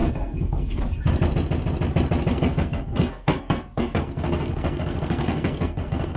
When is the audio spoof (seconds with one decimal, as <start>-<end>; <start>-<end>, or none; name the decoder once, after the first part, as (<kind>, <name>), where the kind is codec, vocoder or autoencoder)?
0.0-0.8 (codec, SNAC); 2.3-6.2